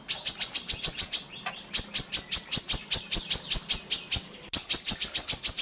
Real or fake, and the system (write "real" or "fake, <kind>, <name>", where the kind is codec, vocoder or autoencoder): real